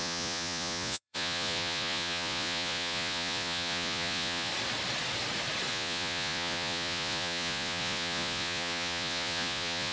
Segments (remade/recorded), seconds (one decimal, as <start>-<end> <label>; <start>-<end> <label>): 0.0-4.5 remade; 4.5-5.7 recorded; 5.7-9.9 remade